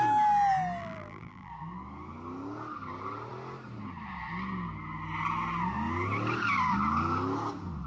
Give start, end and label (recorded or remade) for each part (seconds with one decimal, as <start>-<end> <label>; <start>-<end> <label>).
0.0-0.8 recorded; 0.8-1.5 remade; 1.5-7.9 recorded

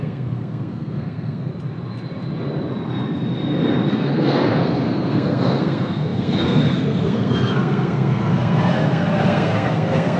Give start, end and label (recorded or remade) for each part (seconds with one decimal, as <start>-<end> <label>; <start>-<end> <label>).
0.0-1.5 remade; 1.5-3.9 recorded; 3.9-10.2 remade